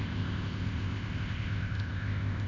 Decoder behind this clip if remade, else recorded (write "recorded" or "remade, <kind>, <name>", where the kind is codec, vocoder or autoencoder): remade, codec, ZipCodec